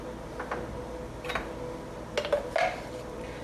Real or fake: real